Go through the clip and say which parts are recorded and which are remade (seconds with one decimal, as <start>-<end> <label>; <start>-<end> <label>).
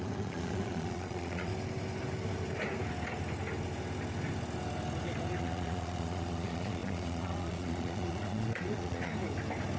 0.0-1.5 remade; 1.5-5.4 recorded; 5.4-9.1 remade; 9.1-9.8 recorded